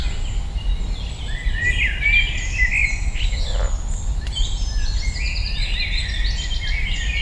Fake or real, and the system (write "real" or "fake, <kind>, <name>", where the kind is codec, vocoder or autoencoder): real